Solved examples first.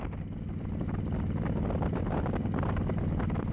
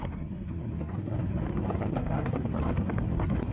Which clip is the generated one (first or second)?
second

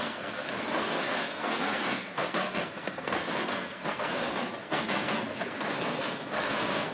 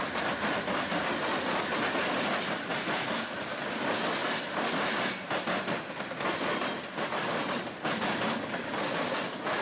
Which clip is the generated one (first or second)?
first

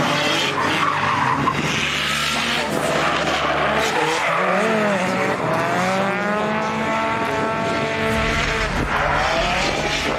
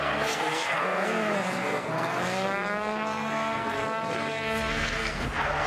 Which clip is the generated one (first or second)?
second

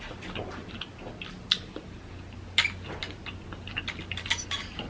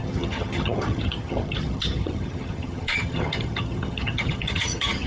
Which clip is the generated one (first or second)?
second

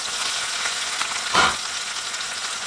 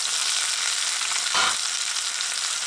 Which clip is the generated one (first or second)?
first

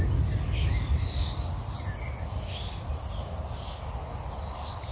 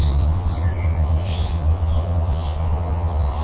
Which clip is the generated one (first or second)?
second